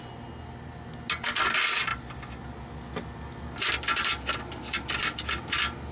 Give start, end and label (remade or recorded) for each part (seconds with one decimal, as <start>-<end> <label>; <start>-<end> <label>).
0.0-5.9 recorded